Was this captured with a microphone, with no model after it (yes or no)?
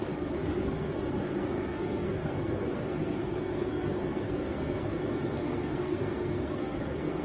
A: no